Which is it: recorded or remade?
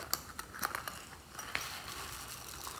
recorded